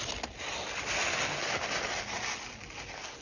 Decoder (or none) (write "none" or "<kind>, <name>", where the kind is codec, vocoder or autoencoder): none